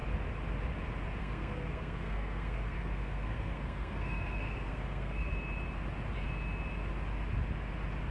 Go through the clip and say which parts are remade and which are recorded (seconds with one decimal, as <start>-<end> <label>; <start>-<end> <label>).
0.0-1.2 recorded; 1.2-5.3 remade; 5.3-8.1 recorded